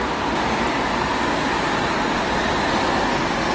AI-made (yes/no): no